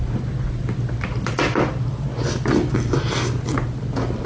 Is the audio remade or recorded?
recorded